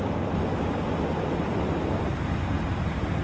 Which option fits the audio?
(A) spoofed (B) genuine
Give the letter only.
B